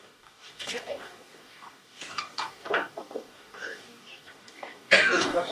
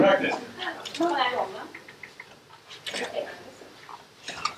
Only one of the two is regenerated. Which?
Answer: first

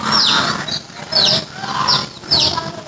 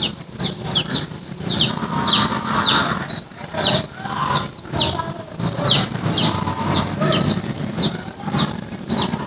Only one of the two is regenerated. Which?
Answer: second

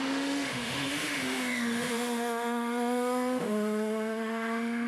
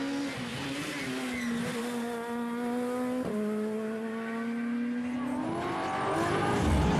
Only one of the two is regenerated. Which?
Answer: first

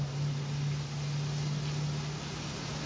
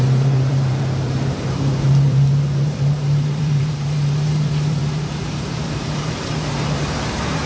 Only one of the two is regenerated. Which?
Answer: second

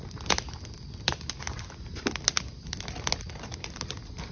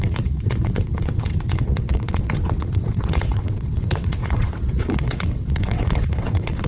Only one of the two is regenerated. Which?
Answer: second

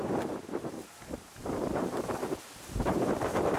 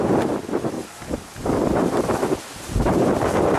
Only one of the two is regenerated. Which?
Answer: first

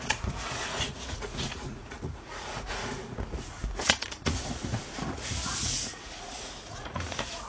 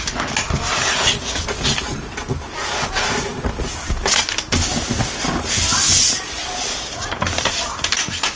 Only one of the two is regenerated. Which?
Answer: first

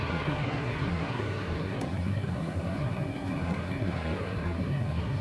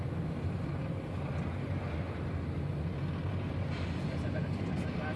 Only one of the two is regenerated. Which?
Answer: first